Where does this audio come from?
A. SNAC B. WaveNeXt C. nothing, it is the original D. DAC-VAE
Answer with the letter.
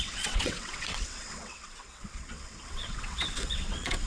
B